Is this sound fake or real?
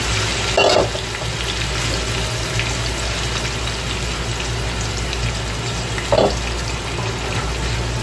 real